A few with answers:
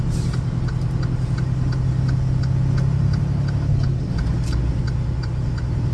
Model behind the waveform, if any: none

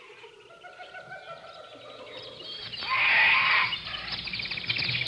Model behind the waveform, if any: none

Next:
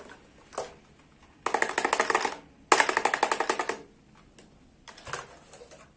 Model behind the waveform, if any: none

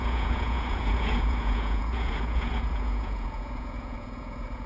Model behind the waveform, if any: vocoder, Vocos